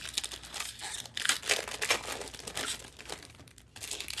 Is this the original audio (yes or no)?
yes